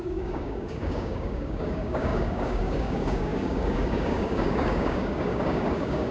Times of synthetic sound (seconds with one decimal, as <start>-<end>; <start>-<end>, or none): 0.0-6.1